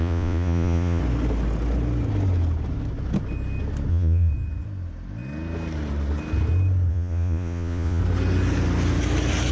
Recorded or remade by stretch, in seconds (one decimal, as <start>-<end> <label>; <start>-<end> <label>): 0.0-1.0 remade; 1.0-3.9 recorded; 3.9-4.3 remade; 4.3-6.9 recorded; 6.9-8.0 remade; 8.0-9.5 recorded

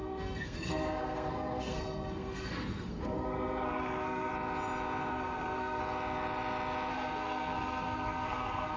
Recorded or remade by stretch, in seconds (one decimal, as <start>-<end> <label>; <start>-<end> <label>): 0.0-4.3 remade; 4.3-5.1 recorded; 5.1-5.8 remade; 5.8-6.9 recorded; 6.9-8.8 remade

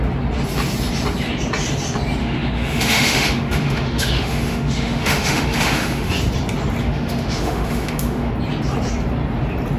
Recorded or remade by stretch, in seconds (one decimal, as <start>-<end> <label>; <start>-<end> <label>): 0.0-2.2 recorded; 2.2-6.1 remade; 6.1-6.8 recorded; 6.8-8.3 remade; 8.3-9.8 recorded

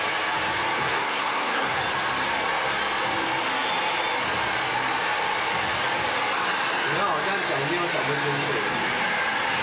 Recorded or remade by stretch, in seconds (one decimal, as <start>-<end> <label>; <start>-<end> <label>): 0.0-0.8 recorded; 0.8-1.8 remade; 1.8-9.6 recorded

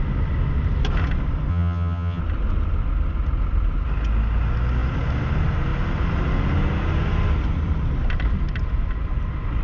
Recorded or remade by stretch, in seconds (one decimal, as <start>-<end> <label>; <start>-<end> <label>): 0.0-1.5 recorded; 1.5-2.2 remade; 2.2-9.6 recorded

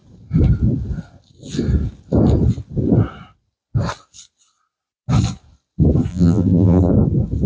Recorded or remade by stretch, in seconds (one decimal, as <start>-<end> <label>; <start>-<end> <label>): 0.0-6.1 recorded; 6.1-6.9 remade; 6.9-7.5 recorded

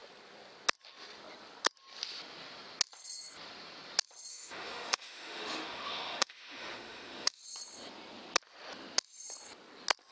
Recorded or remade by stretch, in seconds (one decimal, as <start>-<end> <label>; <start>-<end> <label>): 0.0-4.3 recorded; 4.3-7.4 remade; 7.4-10.1 recorded

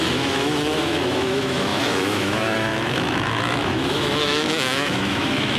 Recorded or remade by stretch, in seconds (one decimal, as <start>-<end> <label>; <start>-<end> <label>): 0.0-5.6 remade